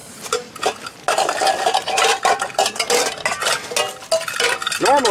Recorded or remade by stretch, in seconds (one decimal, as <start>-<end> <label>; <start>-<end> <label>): 0.0-5.1 recorded